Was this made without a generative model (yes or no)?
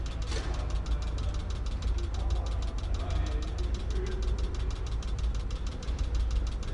yes